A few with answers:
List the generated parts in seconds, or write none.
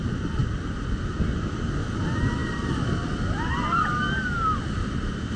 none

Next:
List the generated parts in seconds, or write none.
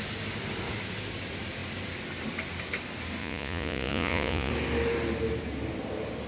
3.2-4.5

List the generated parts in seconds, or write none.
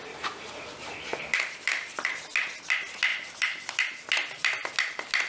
1.1-2.1; 3.1-4.1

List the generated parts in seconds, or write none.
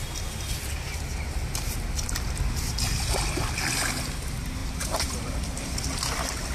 4.6-5.4